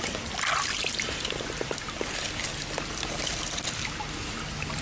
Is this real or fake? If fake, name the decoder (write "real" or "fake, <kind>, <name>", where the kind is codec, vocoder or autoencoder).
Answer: real